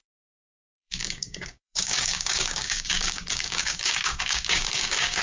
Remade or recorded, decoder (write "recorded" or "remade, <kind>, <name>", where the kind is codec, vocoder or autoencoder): remade, codec, DAC